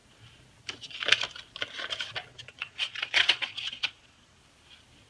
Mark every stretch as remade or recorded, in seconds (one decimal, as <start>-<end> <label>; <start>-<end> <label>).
0.0-2.3 recorded; 2.3-4.4 remade; 4.4-5.1 recorded